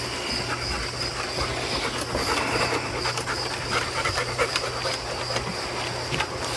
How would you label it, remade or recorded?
recorded